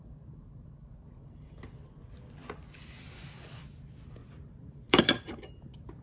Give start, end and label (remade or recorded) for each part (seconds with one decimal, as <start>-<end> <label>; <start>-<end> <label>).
0.0-4.2 recorded; 4.2-5.0 remade; 5.0-6.0 recorded